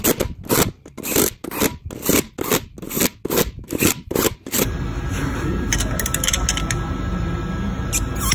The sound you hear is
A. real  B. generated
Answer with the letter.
A